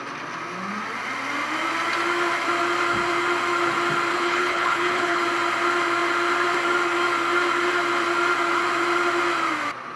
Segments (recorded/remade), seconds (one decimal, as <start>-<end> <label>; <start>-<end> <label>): 0.0-4.1 recorded; 4.1-5.2 remade; 5.2-10.0 recorded